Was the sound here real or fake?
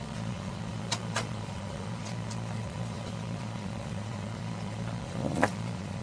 fake